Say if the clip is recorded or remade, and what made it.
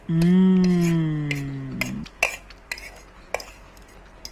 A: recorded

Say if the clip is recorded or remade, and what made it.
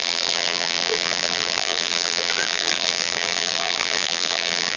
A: remade, vocoder, BigVGAN v2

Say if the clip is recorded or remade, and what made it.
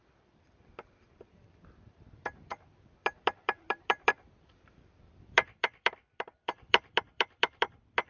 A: remade, vocoder, BigVGAN v2